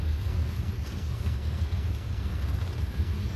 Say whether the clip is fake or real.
fake